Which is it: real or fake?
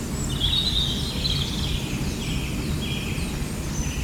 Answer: real